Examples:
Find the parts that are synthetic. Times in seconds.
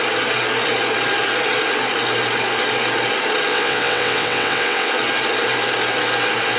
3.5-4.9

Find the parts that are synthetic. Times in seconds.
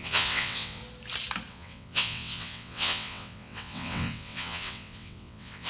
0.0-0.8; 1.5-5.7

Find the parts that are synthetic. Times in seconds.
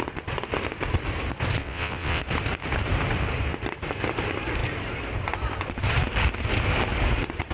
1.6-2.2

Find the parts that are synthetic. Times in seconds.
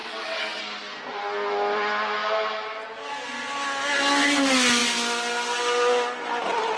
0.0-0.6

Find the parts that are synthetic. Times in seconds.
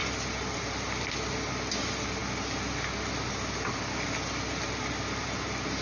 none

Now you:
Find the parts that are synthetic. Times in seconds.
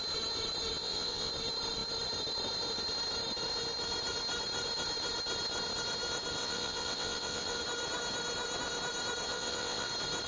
0.8-1.3; 6.4-7.6; 9.3-9.9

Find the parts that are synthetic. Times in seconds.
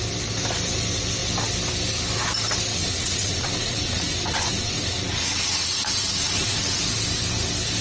2.7-6.8